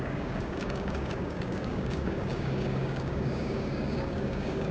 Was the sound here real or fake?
fake